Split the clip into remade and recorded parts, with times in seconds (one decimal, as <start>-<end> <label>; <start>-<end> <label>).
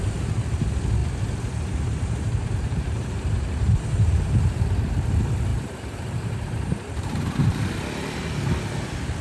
0.0-1.0 recorded; 1.0-4.6 remade; 4.6-5.5 recorded; 5.5-7.6 remade; 7.6-9.2 recorded